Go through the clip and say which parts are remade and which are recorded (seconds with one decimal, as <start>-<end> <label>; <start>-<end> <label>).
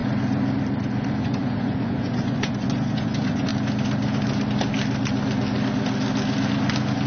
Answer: 0.0-1.2 recorded; 1.2-3.5 remade; 3.5-7.1 recorded